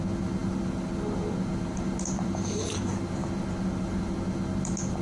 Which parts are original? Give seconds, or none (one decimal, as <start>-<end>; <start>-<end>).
0.0-5.0